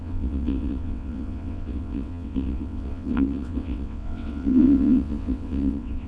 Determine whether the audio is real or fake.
fake